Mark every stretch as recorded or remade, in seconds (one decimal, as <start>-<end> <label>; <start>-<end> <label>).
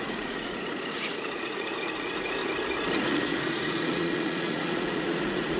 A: 0.0-2.4 remade; 2.4-3.1 recorded; 3.1-5.6 remade